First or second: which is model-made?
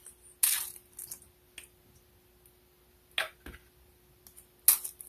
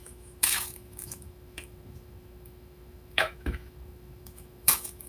second